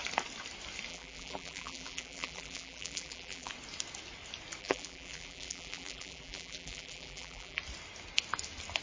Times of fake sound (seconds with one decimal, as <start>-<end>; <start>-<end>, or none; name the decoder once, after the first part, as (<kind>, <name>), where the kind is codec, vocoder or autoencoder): 0.9-3.5 (vocoder, BigVGAN v2); 4.6-7.6